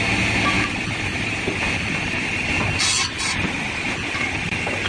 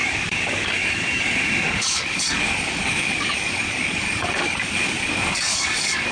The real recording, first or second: first